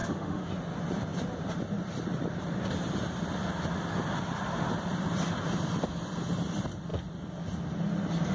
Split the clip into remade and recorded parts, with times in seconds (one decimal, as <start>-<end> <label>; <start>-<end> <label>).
0.0-0.5 remade; 0.5-8.3 recorded